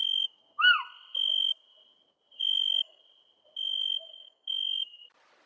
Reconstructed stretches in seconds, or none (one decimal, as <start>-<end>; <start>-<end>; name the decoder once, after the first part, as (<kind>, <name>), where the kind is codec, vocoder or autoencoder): 2.4-3.0 (codec, DAC); 3.8-4.5

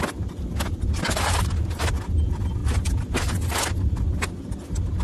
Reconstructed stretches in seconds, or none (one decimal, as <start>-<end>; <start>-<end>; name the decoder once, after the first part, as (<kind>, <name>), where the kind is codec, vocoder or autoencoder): none

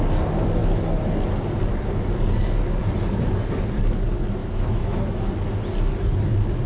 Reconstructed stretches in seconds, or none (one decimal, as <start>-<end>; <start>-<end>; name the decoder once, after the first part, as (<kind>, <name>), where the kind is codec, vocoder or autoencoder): 4.4-5.3 (autoencoder, DAC-VAE)

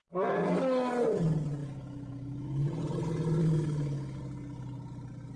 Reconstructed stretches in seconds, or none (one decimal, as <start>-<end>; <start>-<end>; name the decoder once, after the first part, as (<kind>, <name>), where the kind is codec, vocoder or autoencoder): 1.6-2.7 (autoencoder, DAC-VAE); 3.4-4.2